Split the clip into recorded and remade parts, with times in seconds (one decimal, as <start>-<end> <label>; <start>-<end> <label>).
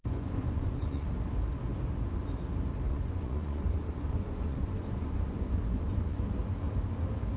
0.0-1.1 remade; 1.1-2.9 recorded; 2.9-6.2 remade; 6.2-7.4 recorded